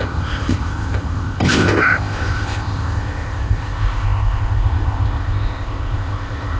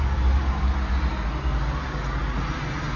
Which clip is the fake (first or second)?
first